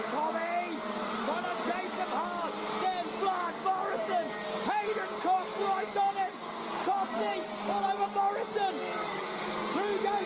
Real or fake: real